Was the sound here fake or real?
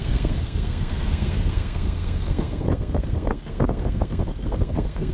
fake